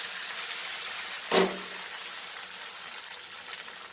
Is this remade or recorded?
recorded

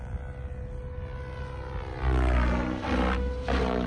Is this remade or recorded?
recorded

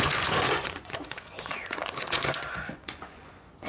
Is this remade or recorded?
remade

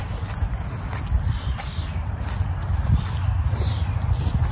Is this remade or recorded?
recorded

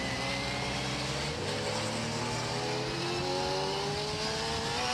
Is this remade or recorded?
recorded